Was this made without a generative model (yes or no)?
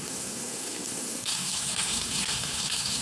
no